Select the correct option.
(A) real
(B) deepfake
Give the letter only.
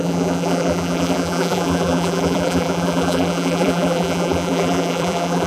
B